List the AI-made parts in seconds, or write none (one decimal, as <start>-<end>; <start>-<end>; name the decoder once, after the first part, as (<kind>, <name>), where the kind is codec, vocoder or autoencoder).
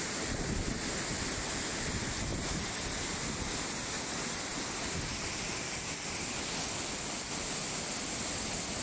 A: none